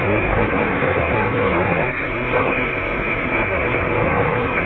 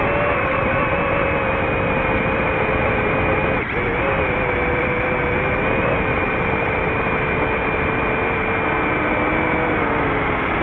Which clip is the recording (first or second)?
second